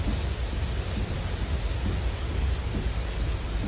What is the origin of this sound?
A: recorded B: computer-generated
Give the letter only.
A